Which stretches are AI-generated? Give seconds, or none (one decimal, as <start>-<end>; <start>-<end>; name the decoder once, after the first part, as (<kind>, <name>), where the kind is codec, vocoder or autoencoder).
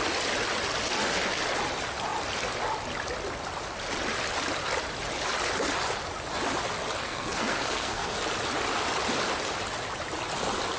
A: 7.0-8.1 (codec, SNAC)